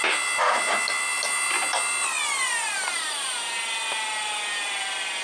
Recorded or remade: recorded